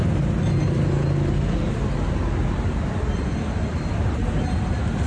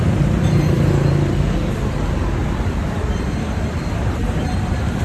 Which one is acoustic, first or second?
first